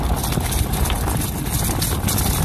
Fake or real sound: real